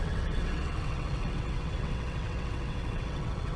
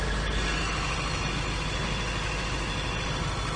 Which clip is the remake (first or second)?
first